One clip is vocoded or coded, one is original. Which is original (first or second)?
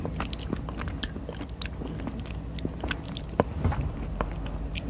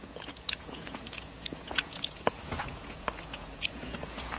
first